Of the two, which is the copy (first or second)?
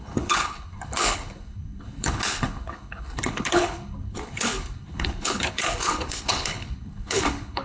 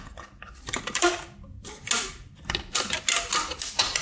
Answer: first